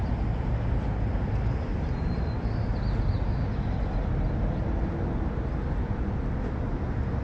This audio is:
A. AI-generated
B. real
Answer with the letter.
B